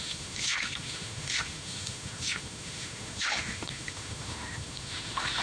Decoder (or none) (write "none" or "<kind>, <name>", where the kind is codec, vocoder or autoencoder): autoencoder, DAC-VAE